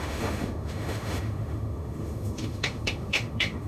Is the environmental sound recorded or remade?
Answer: remade